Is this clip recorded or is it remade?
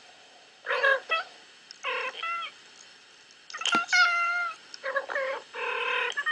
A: recorded